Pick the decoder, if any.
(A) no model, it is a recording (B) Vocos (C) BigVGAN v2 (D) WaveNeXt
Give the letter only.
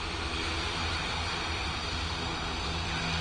C